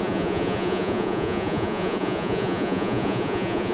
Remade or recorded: remade